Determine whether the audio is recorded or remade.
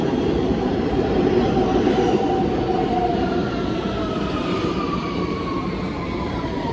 remade